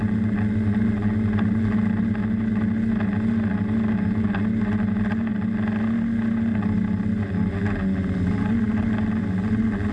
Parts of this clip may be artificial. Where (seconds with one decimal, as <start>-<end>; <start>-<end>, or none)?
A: none